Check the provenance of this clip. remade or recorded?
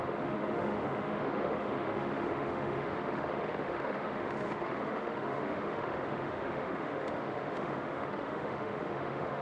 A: remade